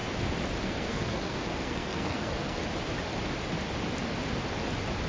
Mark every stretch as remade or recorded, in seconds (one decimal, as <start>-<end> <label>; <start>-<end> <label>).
0.0-0.6 recorded; 0.6-2.6 remade; 2.6-5.1 recorded